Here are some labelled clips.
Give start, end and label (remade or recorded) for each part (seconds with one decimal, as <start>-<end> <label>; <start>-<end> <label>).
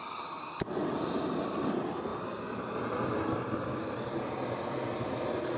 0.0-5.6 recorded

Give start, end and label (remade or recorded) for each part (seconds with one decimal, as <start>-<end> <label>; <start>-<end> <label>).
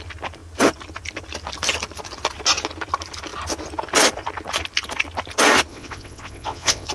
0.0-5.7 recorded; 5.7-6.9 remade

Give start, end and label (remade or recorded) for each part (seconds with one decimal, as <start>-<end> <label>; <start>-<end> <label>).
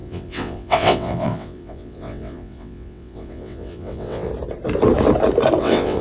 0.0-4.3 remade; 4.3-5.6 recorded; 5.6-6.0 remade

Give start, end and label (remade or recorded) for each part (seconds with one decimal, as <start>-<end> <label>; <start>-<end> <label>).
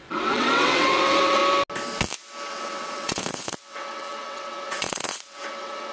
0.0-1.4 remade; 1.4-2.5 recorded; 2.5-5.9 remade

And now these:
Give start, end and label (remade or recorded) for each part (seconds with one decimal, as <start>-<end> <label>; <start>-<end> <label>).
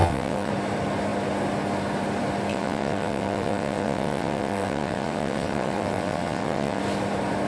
0.0-0.5 remade; 0.5-2.5 recorded; 2.5-6.8 remade; 6.8-7.5 recorded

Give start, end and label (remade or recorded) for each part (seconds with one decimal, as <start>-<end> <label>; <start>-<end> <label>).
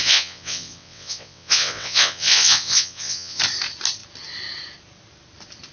0.0-3.4 remade; 3.4-5.7 recorded